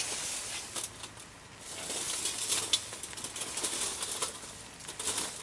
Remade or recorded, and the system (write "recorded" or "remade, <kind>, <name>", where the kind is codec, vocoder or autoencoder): recorded